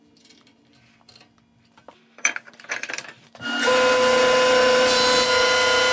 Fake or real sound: fake